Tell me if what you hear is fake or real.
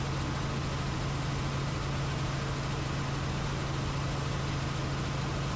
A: real